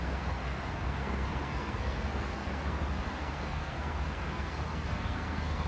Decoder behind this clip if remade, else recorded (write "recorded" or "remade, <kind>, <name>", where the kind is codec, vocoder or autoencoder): remade, codec, SNAC